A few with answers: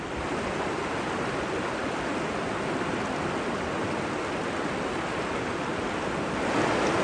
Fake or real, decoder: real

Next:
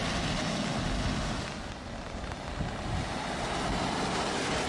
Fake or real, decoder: real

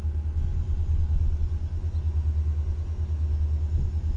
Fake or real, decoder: real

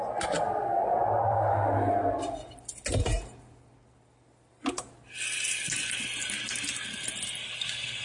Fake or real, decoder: real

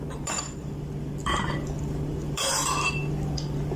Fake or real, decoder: fake, vocoder, BigVGAN v2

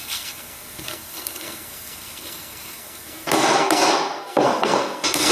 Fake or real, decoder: fake, codec, SNAC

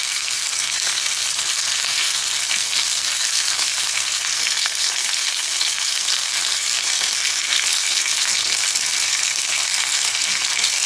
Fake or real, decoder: fake, codec, SNAC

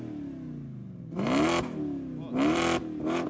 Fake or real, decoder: real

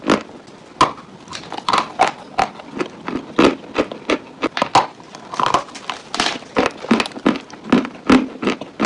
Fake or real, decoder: real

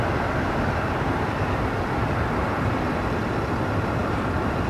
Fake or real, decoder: real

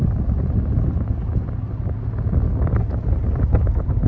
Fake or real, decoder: real